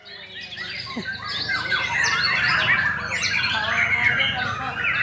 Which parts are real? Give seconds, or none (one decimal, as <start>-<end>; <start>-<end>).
0.0-5.0